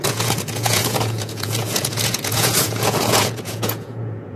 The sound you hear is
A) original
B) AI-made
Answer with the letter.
B